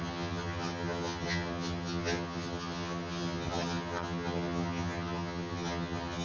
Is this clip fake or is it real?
fake